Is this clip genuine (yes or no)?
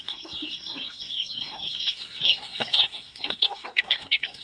no